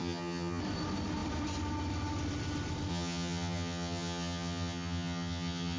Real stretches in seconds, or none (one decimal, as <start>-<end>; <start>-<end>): 0.6-2.9